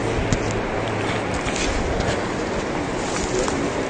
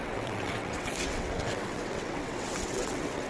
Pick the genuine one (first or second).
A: first